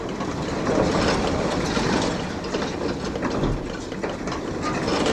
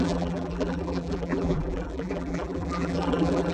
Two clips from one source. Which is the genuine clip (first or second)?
first